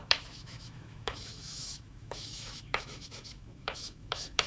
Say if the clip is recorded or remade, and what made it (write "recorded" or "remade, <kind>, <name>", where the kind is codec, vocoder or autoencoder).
remade, autoencoder, DAC-VAE